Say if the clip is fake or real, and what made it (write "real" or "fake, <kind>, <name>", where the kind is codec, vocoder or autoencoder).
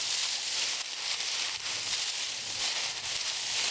real